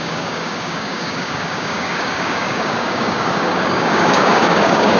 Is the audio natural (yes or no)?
no